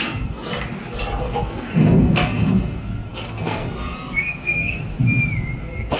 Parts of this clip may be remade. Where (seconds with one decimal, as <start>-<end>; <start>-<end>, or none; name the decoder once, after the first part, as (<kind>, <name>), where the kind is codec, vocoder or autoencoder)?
0.0-0.5 (codec, SNAC); 1.2-4.8; 5.6-6.0